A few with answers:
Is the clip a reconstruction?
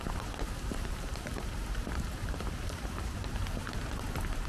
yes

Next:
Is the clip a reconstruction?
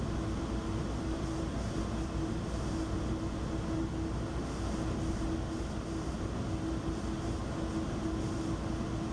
no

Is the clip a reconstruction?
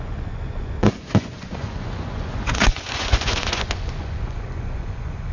yes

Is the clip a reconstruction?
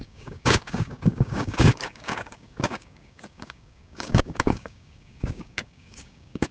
yes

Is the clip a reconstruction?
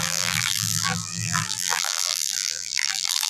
yes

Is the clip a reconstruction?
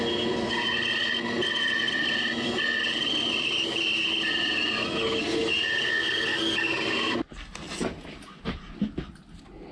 no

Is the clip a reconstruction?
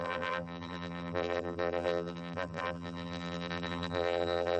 yes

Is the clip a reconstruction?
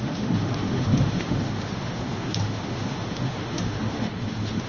yes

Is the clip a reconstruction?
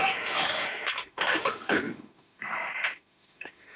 yes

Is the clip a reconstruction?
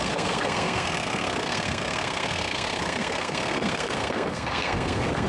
yes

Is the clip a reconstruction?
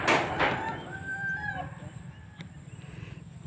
yes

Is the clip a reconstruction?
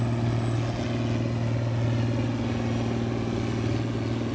no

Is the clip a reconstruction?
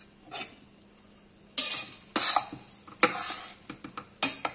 no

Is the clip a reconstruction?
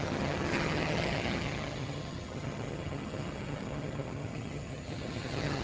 yes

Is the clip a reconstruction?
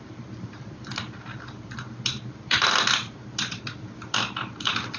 yes